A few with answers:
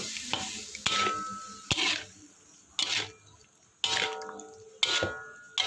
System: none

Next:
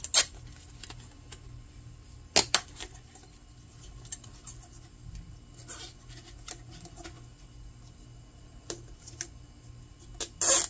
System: none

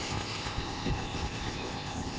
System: codec, ZipCodec